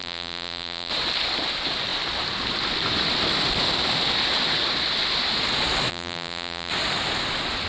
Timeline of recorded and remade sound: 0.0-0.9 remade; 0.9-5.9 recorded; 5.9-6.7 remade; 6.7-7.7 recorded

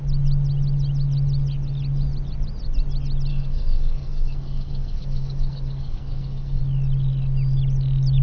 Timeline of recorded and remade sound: 0.0-3.3 recorded; 3.3-6.6 remade; 6.6-8.2 recorded

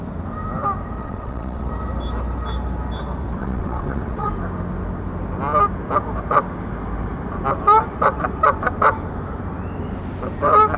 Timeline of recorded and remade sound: 0.0-1.0 recorded; 1.0-1.7 remade; 1.7-3.4 recorded; 3.4-4.3 remade; 4.3-10.8 recorded

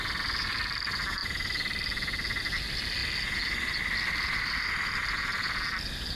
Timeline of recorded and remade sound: 0.0-6.2 recorded